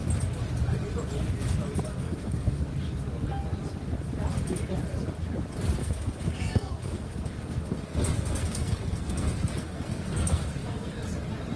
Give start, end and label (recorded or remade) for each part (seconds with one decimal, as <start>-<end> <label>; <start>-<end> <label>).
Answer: 0.0-1.9 recorded; 1.9-2.7 remade; 2.7-5.8 recorded; 5.8-11.0 remade; 11.0-11.6 recorded